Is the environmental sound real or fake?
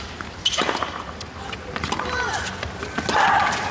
real